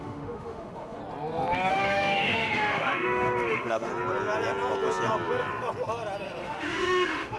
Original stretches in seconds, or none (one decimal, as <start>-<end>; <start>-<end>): 1.0-1.7; 3.9-6.4